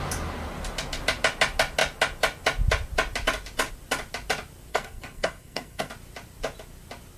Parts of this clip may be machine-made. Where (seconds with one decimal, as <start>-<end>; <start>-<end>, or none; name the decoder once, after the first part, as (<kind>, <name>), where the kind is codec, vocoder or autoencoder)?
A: 4.7-5.9 (codec, SNAC)